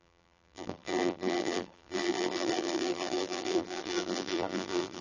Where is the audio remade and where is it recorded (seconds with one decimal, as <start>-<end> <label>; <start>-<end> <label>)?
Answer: 0.0-5.0 remade

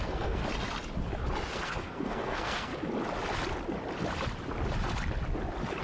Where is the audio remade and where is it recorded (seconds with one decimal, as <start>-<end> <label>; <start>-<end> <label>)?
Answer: 0.0-0.4 remade; 0.4-1.5 recorded; 1.5-2.7 remade; 2.7-5.8 recorded

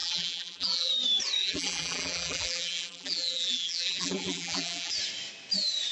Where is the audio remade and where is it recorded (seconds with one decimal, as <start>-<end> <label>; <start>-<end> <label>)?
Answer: 0.0-0.9 remade; 0.9-1.4 recorded; 1.4-4.9 remade; 4.9-5.9 recorded

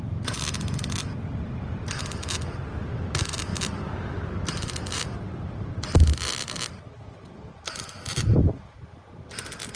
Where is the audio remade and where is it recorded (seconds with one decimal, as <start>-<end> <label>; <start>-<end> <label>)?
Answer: 0.0-9.8 recorded

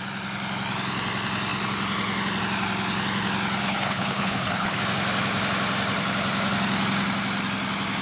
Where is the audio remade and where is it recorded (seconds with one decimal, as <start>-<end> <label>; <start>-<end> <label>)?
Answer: 0.0-3.6 recorded; 3.6-4.8 remade; 4.8-8.0 recorded